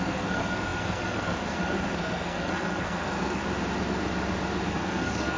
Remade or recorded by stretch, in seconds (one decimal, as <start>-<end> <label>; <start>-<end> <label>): 0.0-3.4 remade; 3.4-4.7 recorded; 4.7-5.4 remade